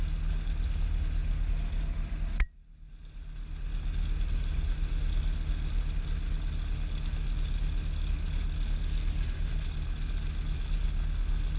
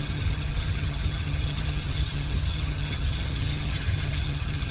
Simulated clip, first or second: second